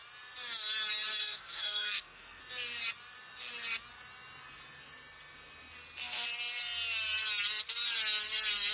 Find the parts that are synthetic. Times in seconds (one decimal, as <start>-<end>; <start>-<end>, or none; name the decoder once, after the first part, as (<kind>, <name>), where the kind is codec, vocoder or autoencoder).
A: 1.2-2.4 (codec, SNAC)